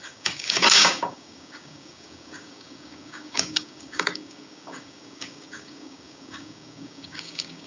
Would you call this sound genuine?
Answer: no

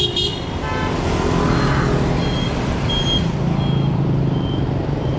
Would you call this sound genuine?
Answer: yes